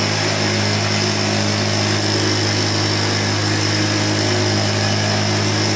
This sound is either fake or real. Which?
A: real